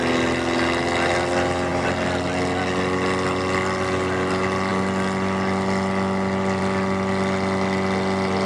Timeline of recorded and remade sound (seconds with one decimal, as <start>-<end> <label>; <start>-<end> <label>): 0.0-8.5 recorded